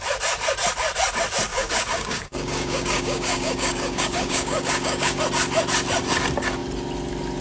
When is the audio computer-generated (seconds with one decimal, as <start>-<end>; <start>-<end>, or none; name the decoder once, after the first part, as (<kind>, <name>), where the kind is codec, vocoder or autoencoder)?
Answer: 1.5-5.2 (codec, DAC)